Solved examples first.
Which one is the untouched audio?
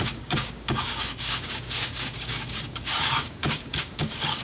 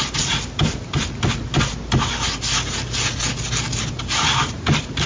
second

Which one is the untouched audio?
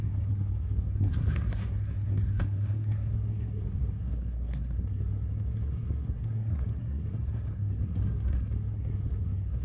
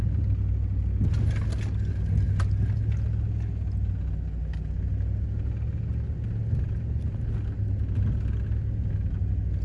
second